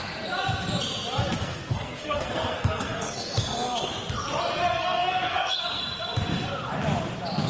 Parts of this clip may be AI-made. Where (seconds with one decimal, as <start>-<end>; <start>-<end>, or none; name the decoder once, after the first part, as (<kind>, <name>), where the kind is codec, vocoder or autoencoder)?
1.4-3.9 (codec, SNAC); 4.8-5.8